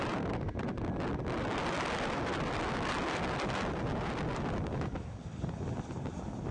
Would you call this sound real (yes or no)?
yes